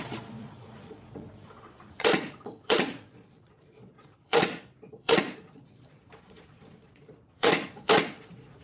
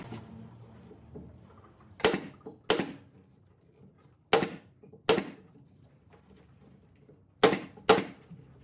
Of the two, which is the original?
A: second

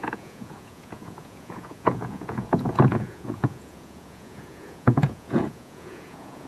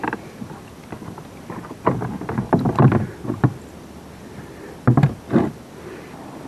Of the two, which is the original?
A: second